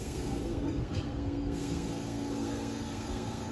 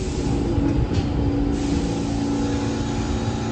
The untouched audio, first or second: second